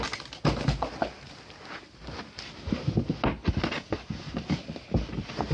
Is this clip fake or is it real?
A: real